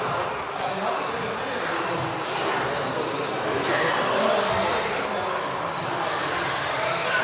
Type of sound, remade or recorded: recorded